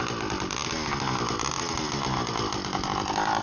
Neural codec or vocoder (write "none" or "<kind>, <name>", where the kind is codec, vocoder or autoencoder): none